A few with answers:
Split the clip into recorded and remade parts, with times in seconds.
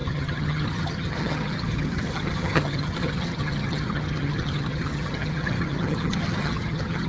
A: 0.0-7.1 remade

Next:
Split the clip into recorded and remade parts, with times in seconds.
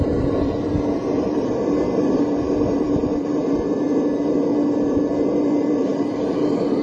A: 0.0-4.5 remade; 4.5-5.3 recorded; 5.3-6.8 remade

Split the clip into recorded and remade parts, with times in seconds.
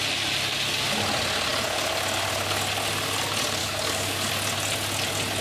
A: 0.0-3.6 recorded; 3.6-4.3 remade; 4.3-5.4 recorded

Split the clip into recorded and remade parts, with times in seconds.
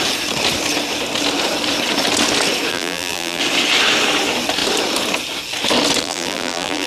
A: 0.0-2.7 recorded; 2.7-3.4 remade; 3.4-6.0 recorded; 6.0-6.9 remade